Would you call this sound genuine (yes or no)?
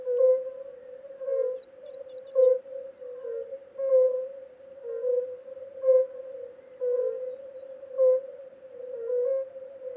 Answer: yes